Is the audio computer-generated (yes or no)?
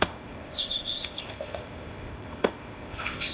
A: yes